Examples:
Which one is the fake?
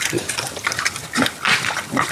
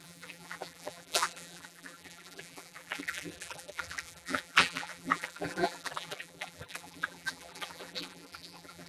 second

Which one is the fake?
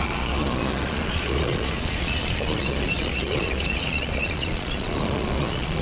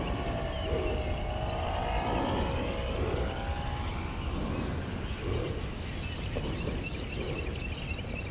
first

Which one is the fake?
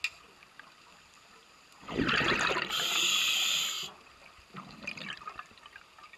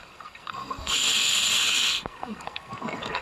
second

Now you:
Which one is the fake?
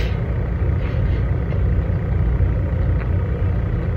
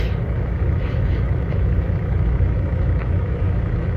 second